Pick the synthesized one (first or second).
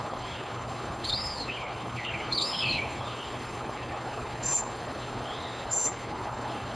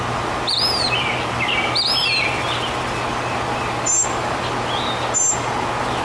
first